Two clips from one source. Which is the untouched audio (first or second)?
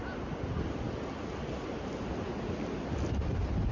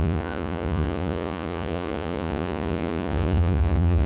first